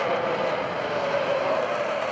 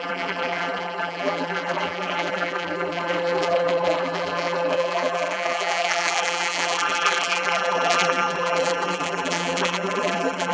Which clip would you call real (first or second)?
first